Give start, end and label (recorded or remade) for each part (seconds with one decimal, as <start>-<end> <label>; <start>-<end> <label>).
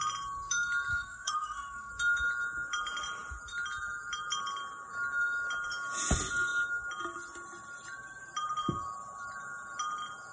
0.0-0.9 recorded; 0.9-1.9 remade; 1.9-10.3 recorded